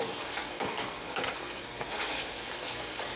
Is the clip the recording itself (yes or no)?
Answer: no